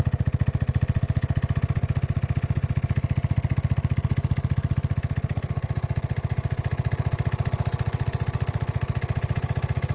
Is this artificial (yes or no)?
no